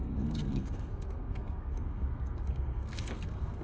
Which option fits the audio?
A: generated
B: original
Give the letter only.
A